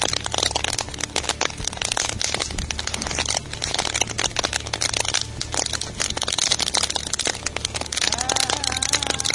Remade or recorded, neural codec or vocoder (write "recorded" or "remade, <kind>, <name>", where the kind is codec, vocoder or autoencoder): recorded